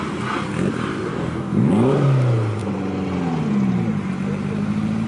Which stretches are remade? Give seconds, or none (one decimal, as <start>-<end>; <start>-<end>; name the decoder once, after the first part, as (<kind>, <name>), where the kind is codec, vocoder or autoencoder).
1.1-1.7 (codec, DAC)